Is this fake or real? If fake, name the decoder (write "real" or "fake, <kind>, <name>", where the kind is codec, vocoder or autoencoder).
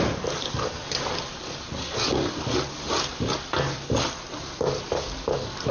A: real